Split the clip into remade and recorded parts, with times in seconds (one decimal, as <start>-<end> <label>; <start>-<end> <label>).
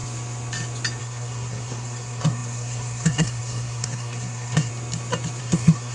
0.0-1.0 recorded; 1.0-4.7 remade; 4.7-5.4 recorded; 5.4-5.9 remade